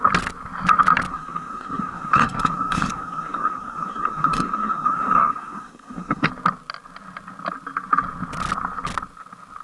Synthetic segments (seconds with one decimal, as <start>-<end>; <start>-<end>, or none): 1.1-6.3